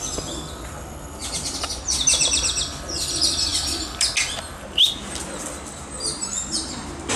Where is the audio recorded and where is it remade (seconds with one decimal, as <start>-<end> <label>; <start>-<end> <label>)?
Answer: 0.0-7.2 recorded

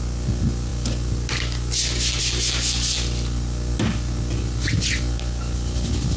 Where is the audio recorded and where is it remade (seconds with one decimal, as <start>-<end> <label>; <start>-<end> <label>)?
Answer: 0.0-6.2 recorded

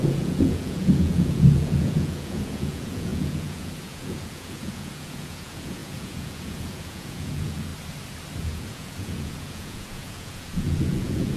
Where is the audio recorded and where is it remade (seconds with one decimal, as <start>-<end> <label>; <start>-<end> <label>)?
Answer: 0.0-7.7 remade; 7.7-8.4 recorded; 8.4-11.4 remade

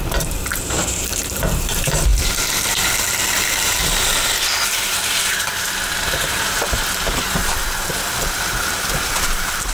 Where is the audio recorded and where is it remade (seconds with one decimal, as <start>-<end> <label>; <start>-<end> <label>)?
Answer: 0.0-3.8 remade; 3.8-6.2 recorded; 6.2-7.4 remade; 7.4-8.6 recorded; 8.6-9.7 remade

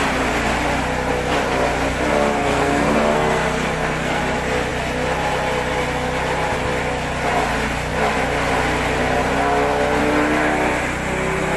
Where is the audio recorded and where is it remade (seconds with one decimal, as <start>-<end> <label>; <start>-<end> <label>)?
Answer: 0.0-2.4 recorded; 2.4-4.2 remade; 4.2-11.6 recorded

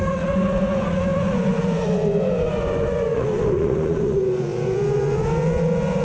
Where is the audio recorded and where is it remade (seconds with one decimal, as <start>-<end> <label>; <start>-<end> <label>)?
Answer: 0.0-6.0 remade

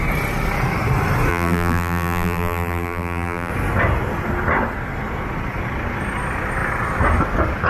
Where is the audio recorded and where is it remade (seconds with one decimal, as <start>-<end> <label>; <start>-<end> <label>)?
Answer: 0.0-1.3 recorded; 1.3-3.5 remade; 3.5-7.7 recorded